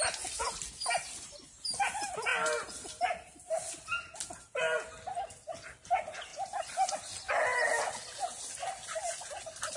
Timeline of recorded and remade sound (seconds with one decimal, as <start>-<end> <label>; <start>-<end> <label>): 0.0-9.8 recorded